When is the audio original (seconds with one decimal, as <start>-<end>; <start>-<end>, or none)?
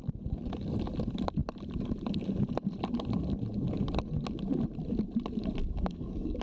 0.0-5.6